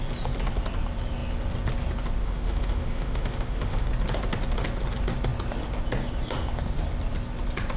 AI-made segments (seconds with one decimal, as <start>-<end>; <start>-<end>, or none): 2.2-3.9